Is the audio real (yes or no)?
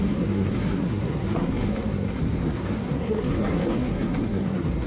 no